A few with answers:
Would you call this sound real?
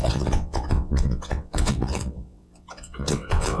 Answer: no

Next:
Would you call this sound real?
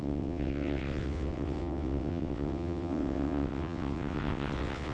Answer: no